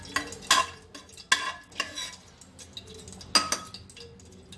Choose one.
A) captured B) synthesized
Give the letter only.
A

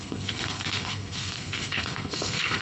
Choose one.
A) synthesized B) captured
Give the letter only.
A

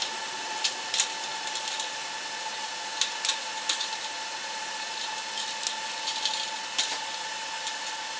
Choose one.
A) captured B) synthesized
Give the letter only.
A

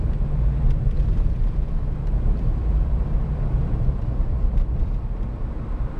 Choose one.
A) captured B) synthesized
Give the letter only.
B